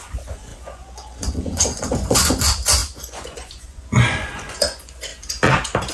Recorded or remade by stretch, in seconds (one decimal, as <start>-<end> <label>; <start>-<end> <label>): 0.0-5.1 remade; 5.1-5.9 recorded